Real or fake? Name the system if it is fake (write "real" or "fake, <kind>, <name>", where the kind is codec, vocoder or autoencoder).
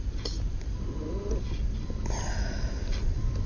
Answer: real